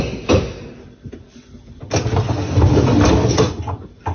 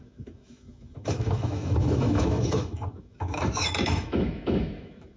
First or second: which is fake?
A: second